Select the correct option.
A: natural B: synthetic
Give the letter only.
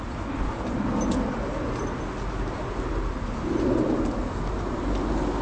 A